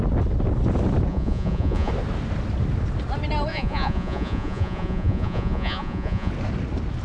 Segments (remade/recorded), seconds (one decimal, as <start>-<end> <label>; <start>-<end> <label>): 0.0-1.1 recorded; 1.1-1.9 remade; 1.9-3.5 recorded; 3.5-6.3 remade; 6.3-7.0 recorded